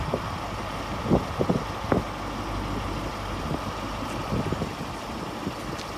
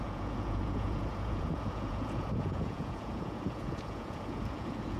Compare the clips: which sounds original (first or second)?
first